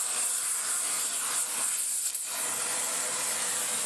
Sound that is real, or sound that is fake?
real